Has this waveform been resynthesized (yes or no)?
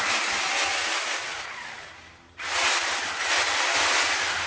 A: no